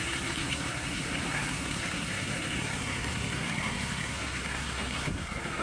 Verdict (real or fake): fake